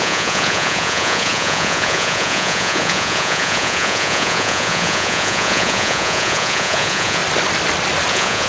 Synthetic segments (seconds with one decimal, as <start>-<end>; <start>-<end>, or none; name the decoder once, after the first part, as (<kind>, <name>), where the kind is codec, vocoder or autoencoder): 0.0-7.2 (vocoder, Vocos); 8.1-8.5